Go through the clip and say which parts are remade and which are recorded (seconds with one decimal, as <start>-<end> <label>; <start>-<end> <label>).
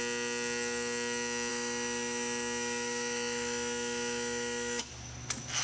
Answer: 0.0-1.5 recorded; 1.5-4.9 remade; 4.9-5.6 recorded